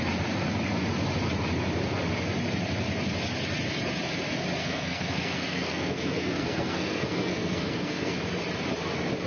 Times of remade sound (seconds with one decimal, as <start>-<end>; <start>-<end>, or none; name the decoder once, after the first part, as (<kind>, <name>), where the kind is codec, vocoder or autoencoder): 4.6-8.3 (codec, SNAC)